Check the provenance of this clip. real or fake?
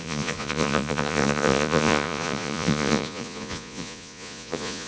fake